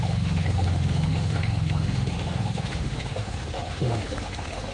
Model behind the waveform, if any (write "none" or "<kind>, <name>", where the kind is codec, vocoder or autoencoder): autoencoder, DAC-VAE